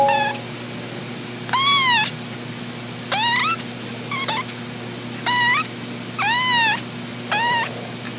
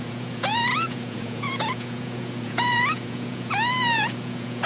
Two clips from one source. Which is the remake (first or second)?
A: second